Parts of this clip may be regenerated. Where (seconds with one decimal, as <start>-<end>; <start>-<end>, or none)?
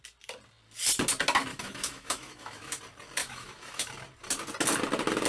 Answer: 1.5-2.8; 3.2-3.9